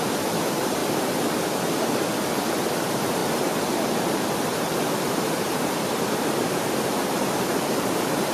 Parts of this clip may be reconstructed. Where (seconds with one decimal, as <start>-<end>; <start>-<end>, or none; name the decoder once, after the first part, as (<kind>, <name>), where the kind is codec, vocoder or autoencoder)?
0.0-0.8 (vocoder, BigVGAN v2); 2.6-3.2; 5.2-8.3